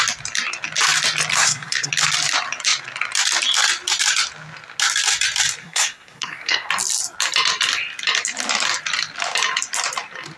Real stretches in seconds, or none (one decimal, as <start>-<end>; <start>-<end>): 0.0-1.3; 1.9-5.6; 6.7-10.4